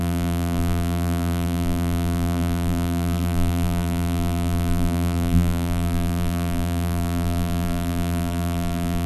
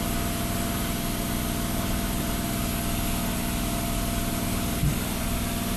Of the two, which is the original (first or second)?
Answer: second